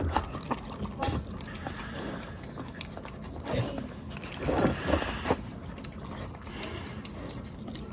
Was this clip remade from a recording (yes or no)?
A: no